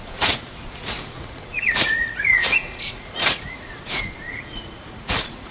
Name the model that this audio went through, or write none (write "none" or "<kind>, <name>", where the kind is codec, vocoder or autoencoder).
vocoder, Vocos